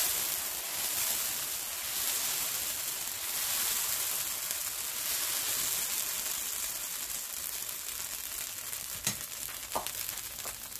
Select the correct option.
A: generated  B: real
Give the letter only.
B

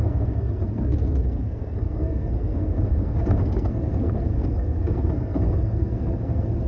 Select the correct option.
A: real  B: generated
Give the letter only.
B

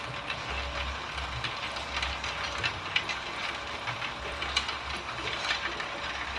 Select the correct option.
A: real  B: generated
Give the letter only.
A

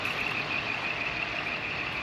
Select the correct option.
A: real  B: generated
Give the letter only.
A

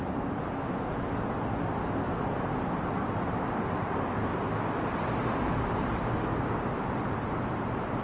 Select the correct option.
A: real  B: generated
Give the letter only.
A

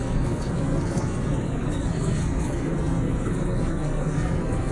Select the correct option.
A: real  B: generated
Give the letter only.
B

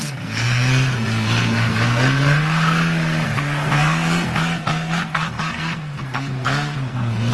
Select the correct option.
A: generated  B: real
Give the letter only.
A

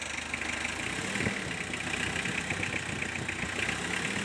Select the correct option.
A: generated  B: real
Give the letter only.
B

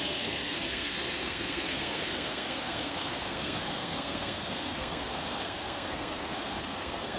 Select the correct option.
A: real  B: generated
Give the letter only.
B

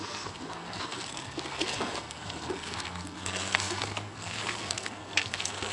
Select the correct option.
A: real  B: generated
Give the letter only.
B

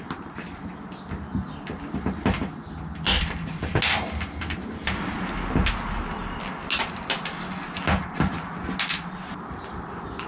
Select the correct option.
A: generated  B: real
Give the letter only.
B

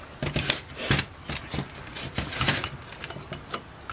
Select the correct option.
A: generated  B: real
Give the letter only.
B